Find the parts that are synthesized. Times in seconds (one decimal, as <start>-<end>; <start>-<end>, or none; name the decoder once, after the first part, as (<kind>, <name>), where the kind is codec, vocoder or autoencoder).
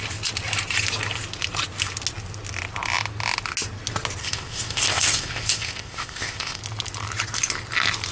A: 4.2-6.6 (codec, ZipCodec)